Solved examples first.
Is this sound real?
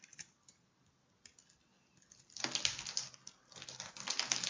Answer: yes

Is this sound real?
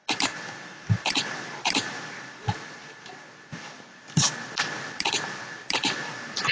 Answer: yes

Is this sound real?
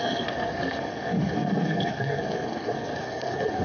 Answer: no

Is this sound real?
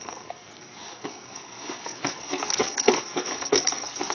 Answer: no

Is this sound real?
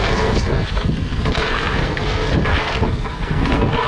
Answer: no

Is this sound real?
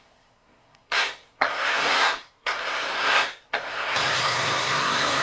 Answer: no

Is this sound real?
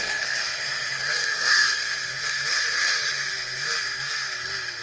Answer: no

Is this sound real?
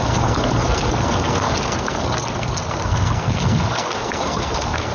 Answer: no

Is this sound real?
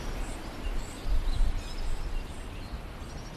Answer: yes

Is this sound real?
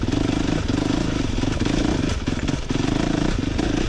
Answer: yes